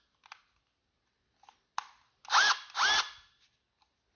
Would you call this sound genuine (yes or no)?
yes